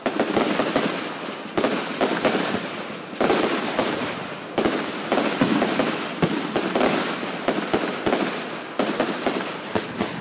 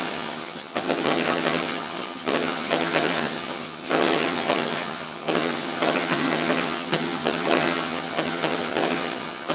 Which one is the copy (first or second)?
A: second